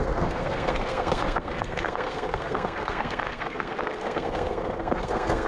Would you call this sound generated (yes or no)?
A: yes